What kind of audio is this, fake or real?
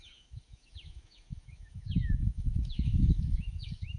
fake